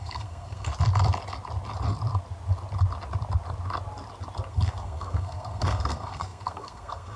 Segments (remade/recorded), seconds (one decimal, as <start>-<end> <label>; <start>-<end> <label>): 0.0-0.7 remade; 0.7-4.5 recorded; 4.5-7.2 remade